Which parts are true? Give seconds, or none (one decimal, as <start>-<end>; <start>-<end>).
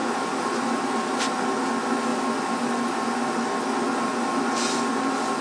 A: 1.6-5.4